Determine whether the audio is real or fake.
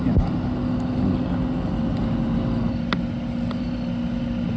real